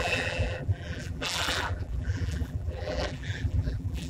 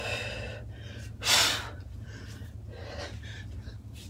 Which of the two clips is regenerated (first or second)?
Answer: first